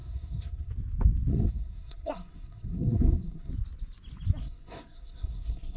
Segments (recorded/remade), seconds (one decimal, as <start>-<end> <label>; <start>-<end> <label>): 0.0-0.7 remade; 0.7-1.3 recorded; 1.3-3.5 remade; 3.5-4.4 recorded; 4.4-5.8 remade